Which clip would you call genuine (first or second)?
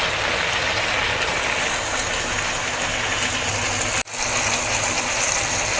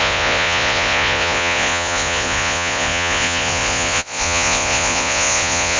first